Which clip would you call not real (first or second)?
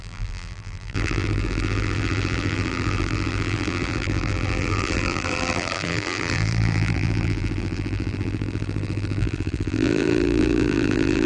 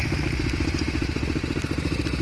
first